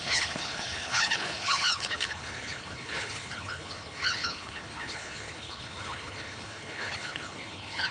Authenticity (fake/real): fake